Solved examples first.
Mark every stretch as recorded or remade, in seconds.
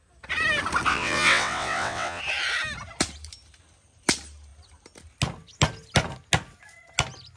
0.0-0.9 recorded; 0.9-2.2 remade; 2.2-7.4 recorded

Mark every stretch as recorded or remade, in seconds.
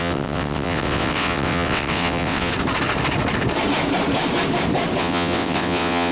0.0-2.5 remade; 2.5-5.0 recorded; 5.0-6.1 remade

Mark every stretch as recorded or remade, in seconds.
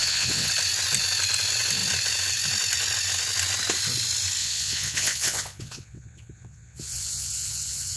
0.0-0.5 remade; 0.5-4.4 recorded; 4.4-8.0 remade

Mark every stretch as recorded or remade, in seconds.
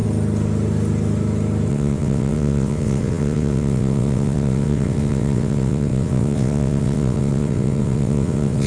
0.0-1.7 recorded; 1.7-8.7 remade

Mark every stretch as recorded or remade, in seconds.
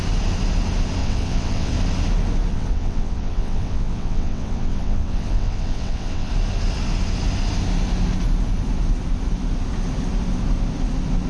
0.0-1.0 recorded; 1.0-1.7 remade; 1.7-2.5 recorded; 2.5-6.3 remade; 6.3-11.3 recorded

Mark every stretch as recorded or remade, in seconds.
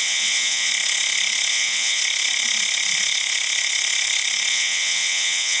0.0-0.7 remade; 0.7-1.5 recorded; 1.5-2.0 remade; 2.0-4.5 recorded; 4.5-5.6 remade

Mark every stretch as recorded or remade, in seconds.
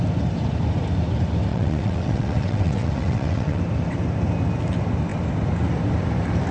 0.0-1.5 recorded; 1.5-3.6 remade; 3.6-6.5 recorded